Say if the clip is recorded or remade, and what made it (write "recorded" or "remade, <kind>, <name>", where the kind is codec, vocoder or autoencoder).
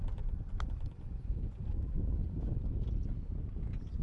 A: recorded